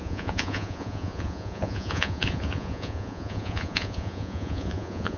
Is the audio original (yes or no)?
no